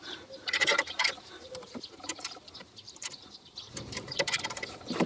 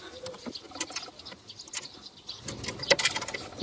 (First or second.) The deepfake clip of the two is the first